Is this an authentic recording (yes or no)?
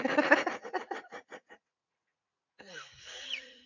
no